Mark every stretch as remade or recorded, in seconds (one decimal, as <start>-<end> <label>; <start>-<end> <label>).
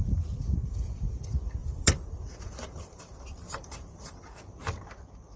0.0-1.6 recorded; 1.6-4.4 remade; 4.4-5.4 recorded